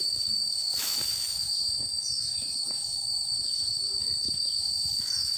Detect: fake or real fake